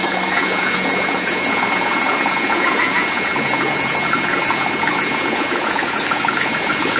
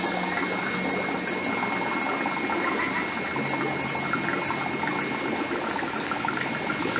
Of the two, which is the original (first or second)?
second